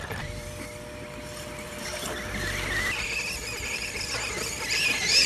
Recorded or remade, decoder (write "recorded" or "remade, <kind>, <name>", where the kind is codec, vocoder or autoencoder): remade, vocoder, BigVGAN v2